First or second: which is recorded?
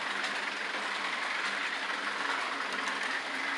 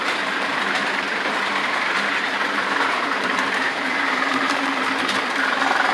first